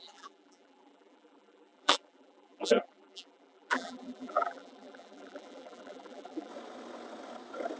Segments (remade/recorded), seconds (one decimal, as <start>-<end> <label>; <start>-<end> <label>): 0.0-6.5 remade; 6.5-7.8 recorded